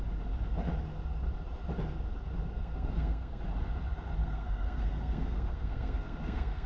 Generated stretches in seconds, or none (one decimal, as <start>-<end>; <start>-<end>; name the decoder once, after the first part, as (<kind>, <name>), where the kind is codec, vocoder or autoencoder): 2.5-3.4 (codec, SNAC); 4.2-6.7